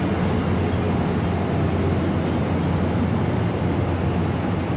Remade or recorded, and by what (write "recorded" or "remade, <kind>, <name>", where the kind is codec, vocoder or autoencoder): recorded